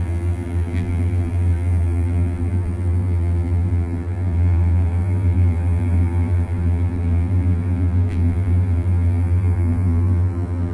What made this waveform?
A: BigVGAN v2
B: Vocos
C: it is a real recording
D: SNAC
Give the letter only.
A